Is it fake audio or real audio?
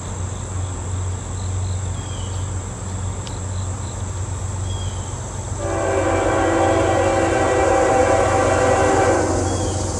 real